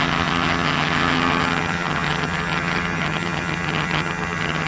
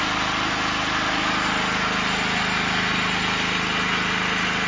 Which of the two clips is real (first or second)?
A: second